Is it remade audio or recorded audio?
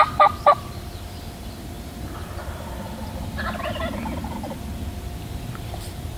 remade